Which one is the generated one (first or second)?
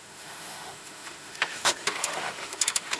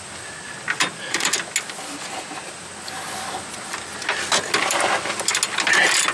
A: first